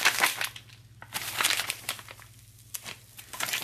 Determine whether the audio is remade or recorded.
recorded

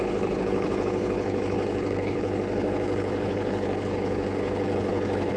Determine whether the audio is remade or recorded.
remade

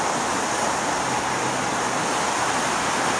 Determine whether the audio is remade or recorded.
recorded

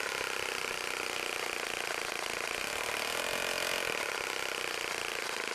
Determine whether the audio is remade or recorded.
recorded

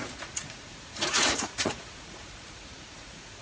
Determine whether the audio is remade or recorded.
remade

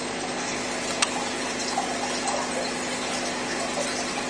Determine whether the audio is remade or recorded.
recorded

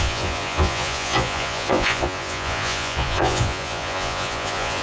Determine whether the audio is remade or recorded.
remade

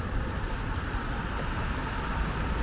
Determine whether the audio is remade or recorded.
recorded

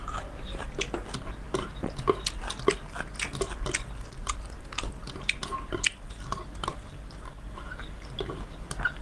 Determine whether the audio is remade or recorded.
recorded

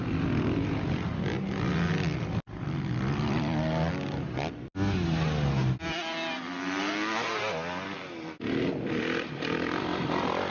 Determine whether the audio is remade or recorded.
recorded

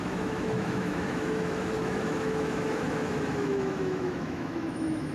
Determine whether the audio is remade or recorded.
remade